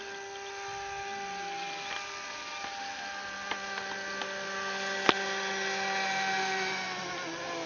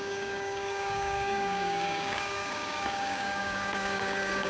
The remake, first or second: second